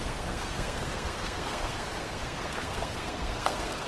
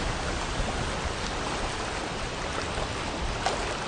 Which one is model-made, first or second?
first